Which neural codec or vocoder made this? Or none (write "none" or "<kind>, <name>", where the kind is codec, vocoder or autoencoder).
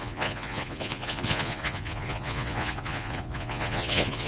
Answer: vocoder, Vocos